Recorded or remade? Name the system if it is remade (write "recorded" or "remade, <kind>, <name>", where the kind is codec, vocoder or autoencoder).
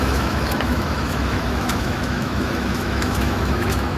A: remade, autoencoder, DAC-VAE